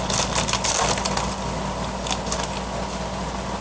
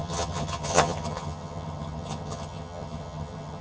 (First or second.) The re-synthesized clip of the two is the second